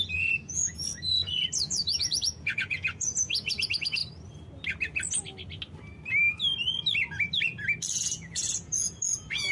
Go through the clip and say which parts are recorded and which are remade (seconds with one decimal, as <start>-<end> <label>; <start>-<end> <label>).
0.0-4.0 remade; 4.0-7.9 recorded; 7.9-9.5 remade